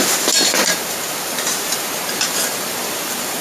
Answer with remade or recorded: remade